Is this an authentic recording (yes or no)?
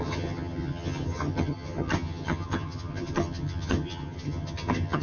no